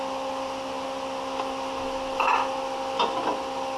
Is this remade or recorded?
recorded